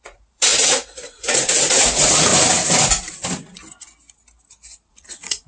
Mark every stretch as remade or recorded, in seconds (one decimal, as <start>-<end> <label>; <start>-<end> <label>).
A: 0.0-2.3 remade; 2.3-4.9 recorded; 4.9-5.5 remade